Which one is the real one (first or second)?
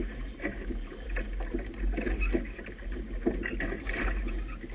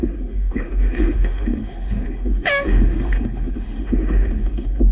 first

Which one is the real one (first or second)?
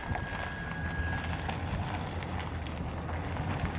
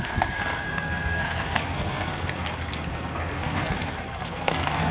first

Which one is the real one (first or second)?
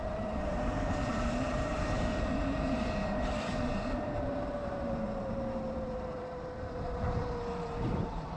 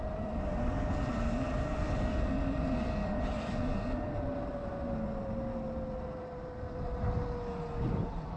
second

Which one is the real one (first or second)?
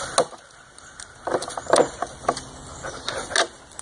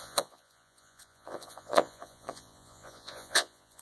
first